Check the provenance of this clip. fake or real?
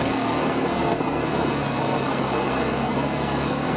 fake